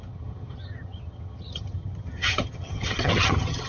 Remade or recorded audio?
remade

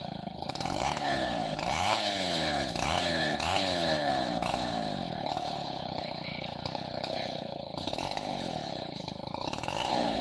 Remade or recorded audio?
remade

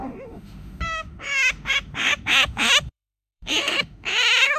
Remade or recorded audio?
remade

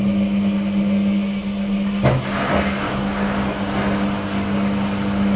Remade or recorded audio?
recorded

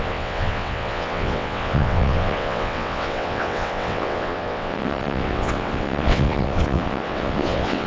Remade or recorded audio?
remade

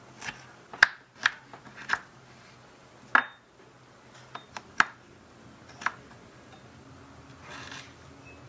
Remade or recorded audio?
recorded